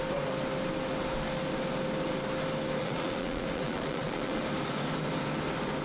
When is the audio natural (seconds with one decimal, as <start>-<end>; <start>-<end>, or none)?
0.0-2.8; 4.4-5.8